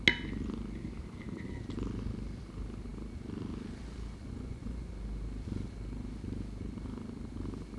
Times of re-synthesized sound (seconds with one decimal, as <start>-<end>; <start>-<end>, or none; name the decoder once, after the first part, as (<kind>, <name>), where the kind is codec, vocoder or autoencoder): 4.2-4.9 (vocoder, Vocos)